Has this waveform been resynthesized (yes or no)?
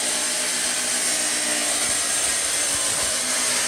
no